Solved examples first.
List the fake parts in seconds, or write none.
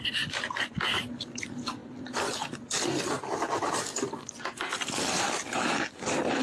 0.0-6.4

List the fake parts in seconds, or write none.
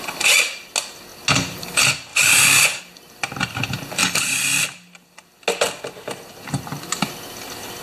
2.1-2.8